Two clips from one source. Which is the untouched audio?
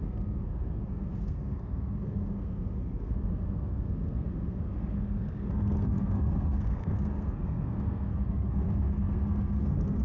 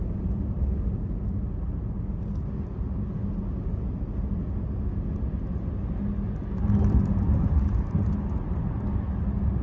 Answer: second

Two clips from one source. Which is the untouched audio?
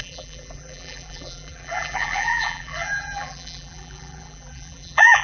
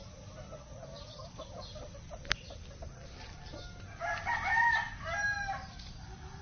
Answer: second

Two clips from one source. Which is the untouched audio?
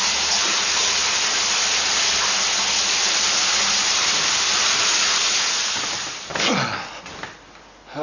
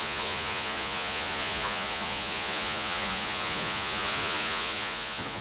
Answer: first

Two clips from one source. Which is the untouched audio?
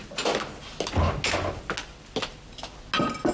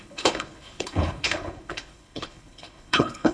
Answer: first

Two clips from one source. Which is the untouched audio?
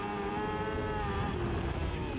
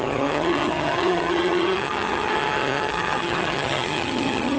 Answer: first